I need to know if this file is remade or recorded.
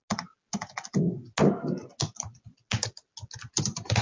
recorded